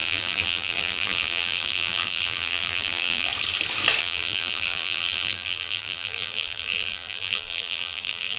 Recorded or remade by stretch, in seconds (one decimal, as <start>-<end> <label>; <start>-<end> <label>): 0.0-3.3 remade; 3.3-4.0 recorded; 4.0-8.4 remade